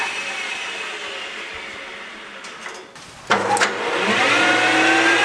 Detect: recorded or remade recorded